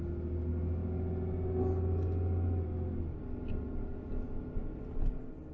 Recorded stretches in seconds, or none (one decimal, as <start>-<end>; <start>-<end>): 0.0-5.5